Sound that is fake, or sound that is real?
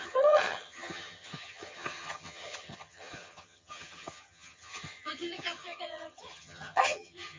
fake